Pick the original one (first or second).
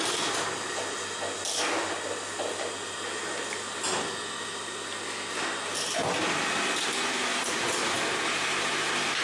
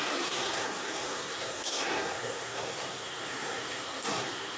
first